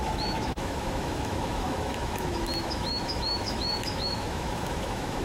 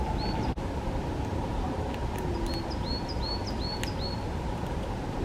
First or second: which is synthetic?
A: first